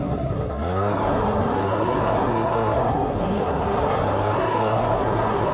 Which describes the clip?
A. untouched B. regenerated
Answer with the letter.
B